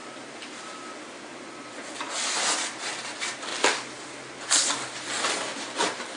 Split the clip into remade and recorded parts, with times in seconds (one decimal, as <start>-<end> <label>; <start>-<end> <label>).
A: 0.0-6.2 recorded